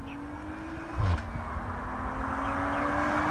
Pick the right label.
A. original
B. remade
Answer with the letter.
A